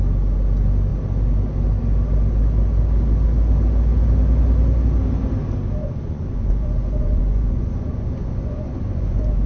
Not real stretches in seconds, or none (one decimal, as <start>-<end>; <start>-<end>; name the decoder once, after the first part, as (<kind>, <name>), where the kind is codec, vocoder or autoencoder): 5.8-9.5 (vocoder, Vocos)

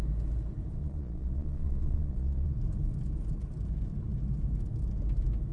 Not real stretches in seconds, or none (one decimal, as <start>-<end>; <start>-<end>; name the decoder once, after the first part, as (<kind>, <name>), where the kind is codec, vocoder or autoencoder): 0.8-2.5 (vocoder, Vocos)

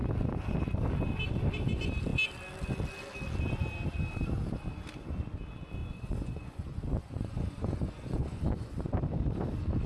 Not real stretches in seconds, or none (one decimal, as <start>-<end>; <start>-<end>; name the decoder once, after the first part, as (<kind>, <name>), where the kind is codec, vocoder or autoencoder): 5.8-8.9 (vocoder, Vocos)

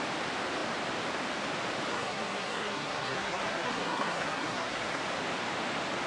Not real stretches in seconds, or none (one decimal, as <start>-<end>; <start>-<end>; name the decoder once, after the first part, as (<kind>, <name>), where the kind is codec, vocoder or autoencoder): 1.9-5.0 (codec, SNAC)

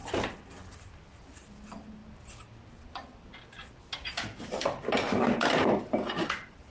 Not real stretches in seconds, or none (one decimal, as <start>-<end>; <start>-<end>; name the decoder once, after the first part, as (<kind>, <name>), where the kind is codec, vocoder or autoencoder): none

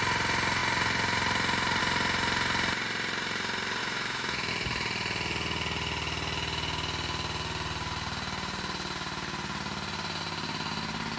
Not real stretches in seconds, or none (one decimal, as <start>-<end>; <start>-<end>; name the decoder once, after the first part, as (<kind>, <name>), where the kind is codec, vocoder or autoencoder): 3.8-4.5 (autoencoder, DAC-VAE)

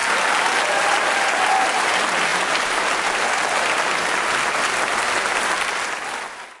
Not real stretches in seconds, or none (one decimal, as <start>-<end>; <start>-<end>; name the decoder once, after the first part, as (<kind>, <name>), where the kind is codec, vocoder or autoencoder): none